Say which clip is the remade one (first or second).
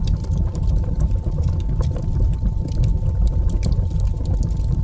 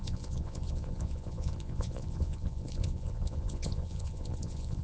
second